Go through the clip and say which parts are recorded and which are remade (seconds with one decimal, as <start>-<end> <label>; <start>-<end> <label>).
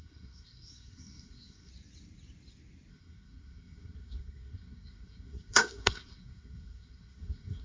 0.0-1.7 remade; 1.7-2.9 recorded; 2.9-7.6 remade